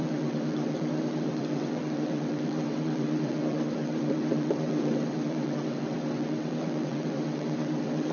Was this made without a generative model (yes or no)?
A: no